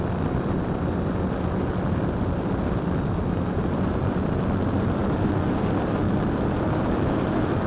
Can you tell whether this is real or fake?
fake